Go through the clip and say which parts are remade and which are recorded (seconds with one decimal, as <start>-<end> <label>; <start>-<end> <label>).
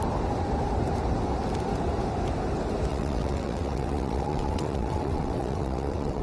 0.0-2.9 recorded; 2.9-6.2 remade